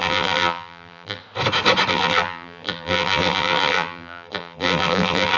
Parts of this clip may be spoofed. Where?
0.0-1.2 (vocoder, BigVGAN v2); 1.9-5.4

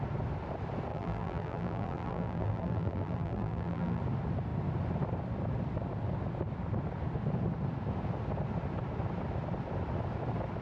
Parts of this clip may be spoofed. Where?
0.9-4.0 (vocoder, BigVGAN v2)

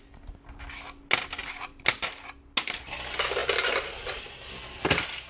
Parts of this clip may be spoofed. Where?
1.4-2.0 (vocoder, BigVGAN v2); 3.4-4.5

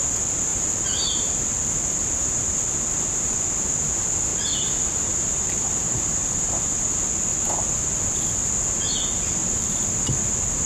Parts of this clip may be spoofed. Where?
0.5-1.5 (vocoder, BigVGAN v2); 4.3-6.8; 9.4-10.2

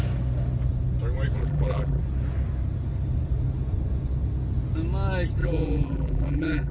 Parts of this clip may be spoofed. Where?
1.4-2.0 (vocoder, BigVGAN v2); 5.4-6.7

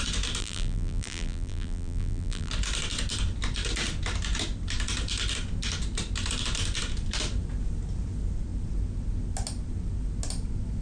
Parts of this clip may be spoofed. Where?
0.4-2.5 (vocoder, BigVGAN v2)

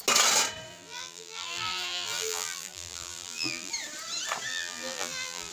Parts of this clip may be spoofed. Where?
0.7-3.7 (vocoder, BigVGAN v2); 4.5-5.5